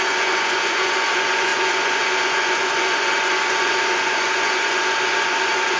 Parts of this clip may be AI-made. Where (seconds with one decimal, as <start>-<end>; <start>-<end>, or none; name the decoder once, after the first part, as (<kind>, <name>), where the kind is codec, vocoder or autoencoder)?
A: 0.0-5.8 (vocoder, Vocos)